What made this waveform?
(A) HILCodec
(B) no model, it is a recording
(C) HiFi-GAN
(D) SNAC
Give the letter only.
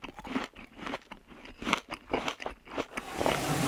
B